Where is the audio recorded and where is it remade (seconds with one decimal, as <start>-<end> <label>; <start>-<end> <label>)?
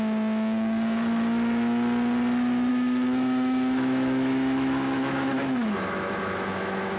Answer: 0.0-2.7 recorded; 2.7-7.0 remade